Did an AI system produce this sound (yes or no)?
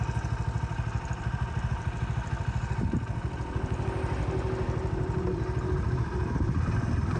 no